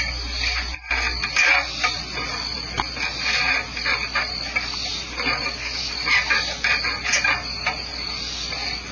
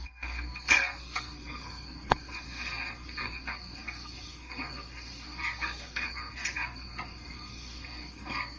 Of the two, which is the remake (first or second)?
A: second